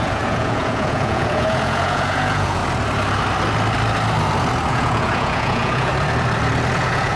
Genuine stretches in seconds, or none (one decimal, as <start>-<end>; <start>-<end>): 2.6-4.7; 5.9-6.7